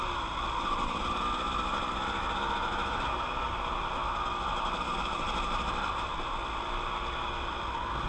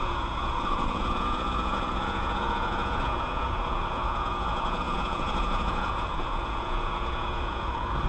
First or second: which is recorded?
first